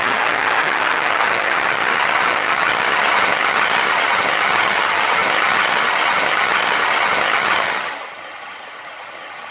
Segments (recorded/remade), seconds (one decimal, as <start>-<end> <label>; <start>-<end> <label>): 0.0-9.5 remade